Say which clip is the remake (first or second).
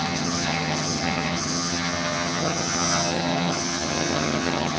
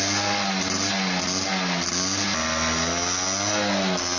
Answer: first